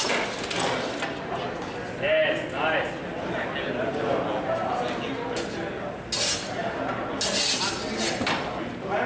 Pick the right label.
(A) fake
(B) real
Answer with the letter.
B